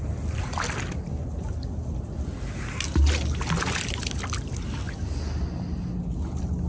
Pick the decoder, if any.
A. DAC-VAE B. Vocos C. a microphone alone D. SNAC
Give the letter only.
C